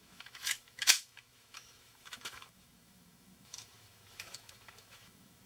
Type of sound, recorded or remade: remade